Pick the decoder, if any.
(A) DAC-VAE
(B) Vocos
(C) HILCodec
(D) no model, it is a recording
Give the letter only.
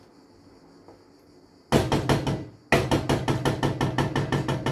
D